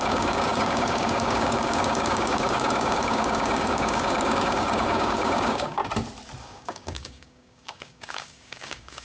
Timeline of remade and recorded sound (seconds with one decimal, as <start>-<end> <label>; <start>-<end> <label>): 0.0-5.8 remade; 5.8-6.4 recorded; 6.4-9.0 remade